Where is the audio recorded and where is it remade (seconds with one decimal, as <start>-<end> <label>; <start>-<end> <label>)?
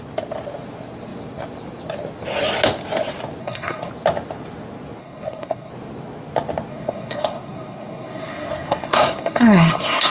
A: 0.0-3.4 recorded; 3.4-3.9 remade; 3.9-5.0 recorded; 5.0-5.7 remade; 5.7-6.7 recorded; 6.7-10.1 remade